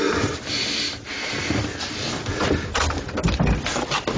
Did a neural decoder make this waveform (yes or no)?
no